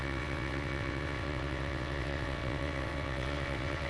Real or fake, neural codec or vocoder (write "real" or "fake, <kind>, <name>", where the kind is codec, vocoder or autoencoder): fake, vocoder, WaveNeXt